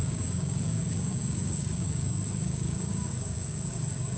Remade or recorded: remade